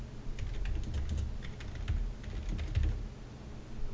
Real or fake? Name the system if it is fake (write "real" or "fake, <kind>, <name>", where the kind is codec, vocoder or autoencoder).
real